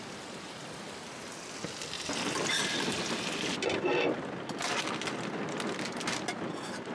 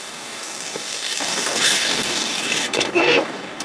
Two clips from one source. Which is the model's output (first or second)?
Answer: second